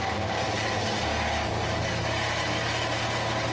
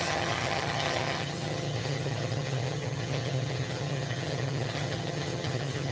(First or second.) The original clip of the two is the first